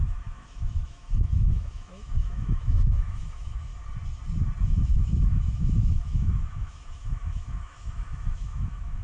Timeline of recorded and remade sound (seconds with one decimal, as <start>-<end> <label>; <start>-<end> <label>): 0.0-3.7 remade; 3.7-4.6 recorded; 4.6-9.0 remade